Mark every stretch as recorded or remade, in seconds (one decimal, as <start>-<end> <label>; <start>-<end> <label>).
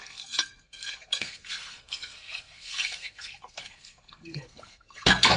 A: 0.0-5.4 remade